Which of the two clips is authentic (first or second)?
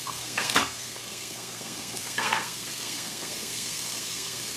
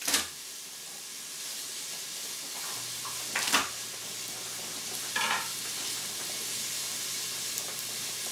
second